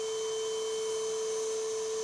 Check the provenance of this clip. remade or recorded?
recorded